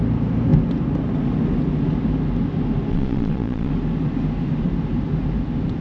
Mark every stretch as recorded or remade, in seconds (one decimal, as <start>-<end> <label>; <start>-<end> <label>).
0.0-2.9 recorded; 2.9-3.7 remade; 3.7-5.8 recorded